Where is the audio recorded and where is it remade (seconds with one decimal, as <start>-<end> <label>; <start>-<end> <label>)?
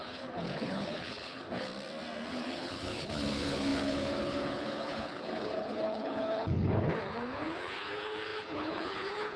0.0-1.7 remade; 1.7-2.3 recorded; 2.3-9.4 remade